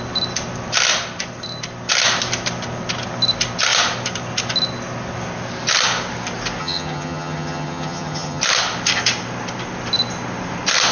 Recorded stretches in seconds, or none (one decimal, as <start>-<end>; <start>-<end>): 0.0-6.6; 8.4-10.9